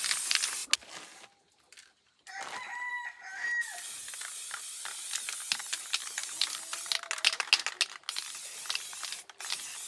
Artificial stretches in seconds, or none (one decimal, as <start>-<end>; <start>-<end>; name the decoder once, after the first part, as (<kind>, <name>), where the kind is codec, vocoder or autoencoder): none

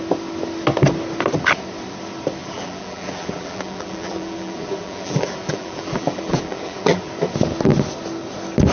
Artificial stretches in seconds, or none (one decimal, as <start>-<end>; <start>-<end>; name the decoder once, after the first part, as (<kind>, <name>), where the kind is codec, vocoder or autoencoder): 2.4-7.1 (vocoder, BigVGAN v2)

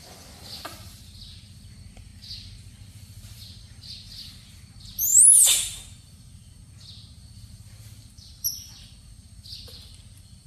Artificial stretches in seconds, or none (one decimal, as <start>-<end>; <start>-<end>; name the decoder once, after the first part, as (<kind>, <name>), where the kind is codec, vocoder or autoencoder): none

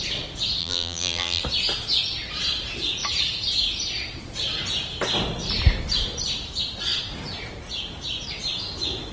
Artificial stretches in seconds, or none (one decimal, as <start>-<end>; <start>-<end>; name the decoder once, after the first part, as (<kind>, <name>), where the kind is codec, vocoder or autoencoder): 0.6-1.4 (vocoder, BigVGAN v2)

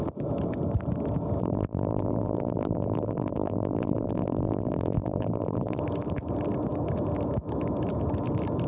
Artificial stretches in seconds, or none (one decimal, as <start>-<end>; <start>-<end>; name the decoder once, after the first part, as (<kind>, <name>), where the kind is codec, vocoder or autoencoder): 1.4-5.8 (vocoder, BigVGAN v2)

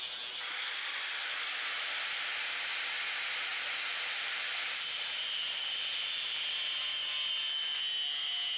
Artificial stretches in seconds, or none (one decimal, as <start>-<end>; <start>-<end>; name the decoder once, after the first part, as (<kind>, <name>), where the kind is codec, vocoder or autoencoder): 3.5-6.4 (vocoder, BigVGAN v2)